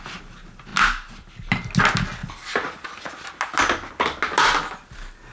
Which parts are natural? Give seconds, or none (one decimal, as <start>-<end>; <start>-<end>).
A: 0.0-5.3